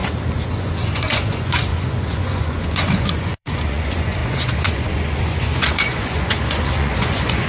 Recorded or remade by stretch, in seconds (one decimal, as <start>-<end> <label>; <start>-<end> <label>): 0.0-0.5 recorded; 0.5-7.5 remade